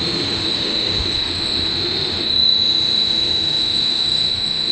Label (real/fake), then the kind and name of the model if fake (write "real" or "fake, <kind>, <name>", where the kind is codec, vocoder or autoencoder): fake, autoencoder, DAC-VAE